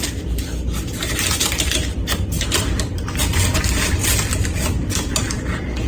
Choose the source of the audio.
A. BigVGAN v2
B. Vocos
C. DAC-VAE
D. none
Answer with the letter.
D